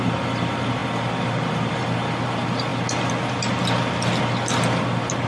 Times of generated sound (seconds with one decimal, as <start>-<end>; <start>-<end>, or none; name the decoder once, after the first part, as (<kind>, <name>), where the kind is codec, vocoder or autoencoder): none

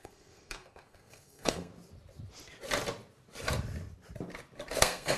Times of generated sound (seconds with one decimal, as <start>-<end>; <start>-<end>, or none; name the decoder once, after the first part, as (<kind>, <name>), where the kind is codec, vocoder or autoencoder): 0.0-1.7 (codec, SNAC); 4.8-5.2

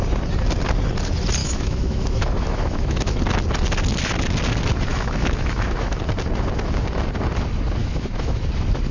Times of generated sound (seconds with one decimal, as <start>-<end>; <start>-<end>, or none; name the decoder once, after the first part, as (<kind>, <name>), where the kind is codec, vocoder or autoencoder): 1.4-3.2 (autoencoder, DAC-VAE); 4.9-6.0; 7.8-8.4

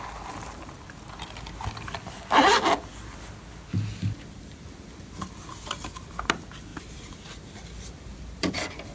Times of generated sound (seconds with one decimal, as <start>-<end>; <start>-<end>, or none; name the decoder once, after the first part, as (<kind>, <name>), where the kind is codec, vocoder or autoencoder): 6.7-8.5 (vocoder, BigVGAN v2)

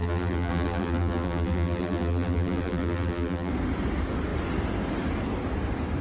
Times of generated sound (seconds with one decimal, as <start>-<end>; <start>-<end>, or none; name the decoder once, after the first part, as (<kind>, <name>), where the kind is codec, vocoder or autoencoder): 0.0-3.5 (vocoder, BigVGAN v2)

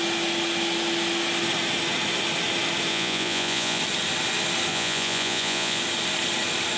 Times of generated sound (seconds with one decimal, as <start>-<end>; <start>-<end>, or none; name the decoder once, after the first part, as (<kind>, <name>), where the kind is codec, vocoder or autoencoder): 2.9-3.8 (vocoder, Vocos); 4.7-5.8

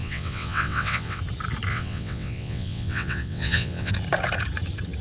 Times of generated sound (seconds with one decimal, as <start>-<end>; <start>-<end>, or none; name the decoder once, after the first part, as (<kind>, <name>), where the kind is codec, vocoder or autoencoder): 0.0-1.2 (vocoder, WaveNeXt); 1.7-3.9